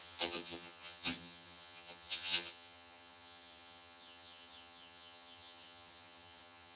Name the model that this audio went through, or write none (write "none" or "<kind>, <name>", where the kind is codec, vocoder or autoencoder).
vocoder, HiFi-GAN